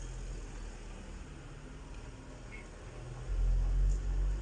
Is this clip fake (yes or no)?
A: no